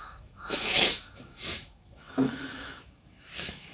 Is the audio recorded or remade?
remade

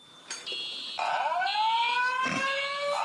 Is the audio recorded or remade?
recorded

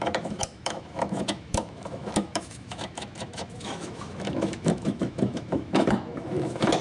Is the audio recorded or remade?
remade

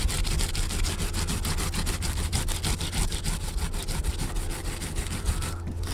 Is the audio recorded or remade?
recorded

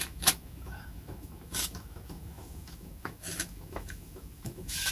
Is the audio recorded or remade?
remade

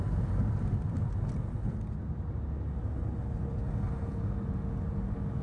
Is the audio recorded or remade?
recorded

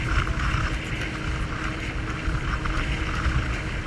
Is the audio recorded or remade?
recorded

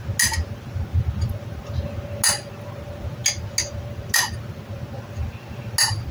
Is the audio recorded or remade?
recorded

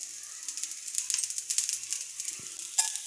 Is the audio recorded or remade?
recorded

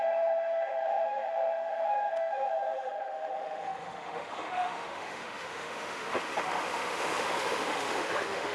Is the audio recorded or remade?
remade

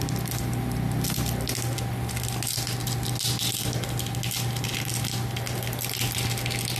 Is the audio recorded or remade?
recorded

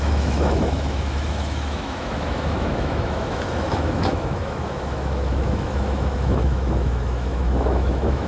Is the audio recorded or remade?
remade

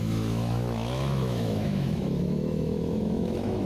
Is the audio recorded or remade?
remade